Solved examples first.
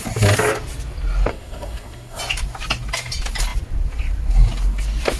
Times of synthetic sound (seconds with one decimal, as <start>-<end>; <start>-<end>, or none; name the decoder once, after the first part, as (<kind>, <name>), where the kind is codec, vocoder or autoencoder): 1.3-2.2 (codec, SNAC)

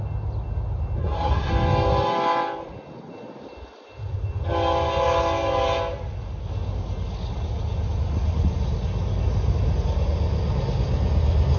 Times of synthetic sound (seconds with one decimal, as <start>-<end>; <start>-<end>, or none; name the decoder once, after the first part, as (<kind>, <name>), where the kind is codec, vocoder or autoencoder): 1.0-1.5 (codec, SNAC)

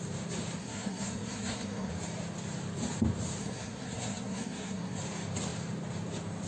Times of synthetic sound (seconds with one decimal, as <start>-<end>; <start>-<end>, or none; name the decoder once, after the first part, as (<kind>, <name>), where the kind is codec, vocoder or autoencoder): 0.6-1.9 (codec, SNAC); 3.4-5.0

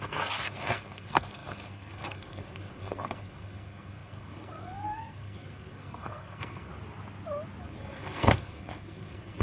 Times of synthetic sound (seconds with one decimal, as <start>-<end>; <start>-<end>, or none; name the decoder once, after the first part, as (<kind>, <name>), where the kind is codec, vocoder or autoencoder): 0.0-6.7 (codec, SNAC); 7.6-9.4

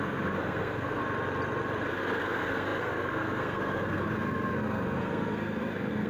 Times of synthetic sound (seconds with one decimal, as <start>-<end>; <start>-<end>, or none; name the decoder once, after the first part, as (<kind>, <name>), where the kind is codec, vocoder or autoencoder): 0.0-1.0 (codec, SNAC); 1.9-6.1

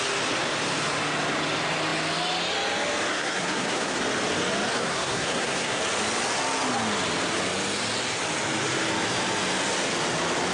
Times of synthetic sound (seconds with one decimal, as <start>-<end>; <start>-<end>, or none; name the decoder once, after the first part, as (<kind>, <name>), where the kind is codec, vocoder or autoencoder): 3.1-4.0 (codec, SNAC); 4.8-5.8

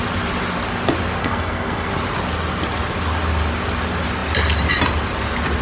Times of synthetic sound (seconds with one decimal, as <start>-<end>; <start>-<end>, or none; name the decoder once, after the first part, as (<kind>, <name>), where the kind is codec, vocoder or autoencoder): 1.2-1.9 (codec, SNAC)